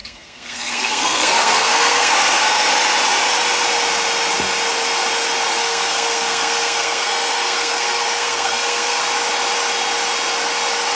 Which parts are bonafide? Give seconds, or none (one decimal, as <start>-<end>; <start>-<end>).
2.7-5.6; 9.0-11.0